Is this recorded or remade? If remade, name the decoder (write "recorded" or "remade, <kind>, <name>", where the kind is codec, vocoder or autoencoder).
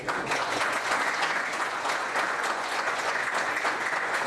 remade, vocoder, Vocos